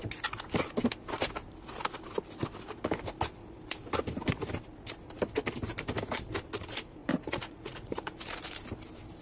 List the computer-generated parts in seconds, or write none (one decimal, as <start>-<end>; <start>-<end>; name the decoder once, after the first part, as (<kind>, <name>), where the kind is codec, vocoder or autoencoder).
7.0-8.2 (vocoder, Vocos)